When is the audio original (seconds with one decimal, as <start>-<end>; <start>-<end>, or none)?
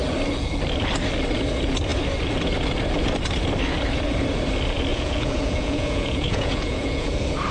0.0-4.9; 7.1-7.5